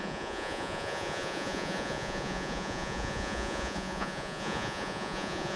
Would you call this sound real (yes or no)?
no